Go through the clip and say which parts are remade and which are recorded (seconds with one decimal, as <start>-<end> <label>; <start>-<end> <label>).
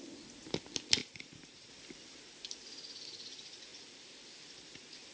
0.0-1.0 recorded; 1.0-1.7 remade; 1.7-5.1 recorded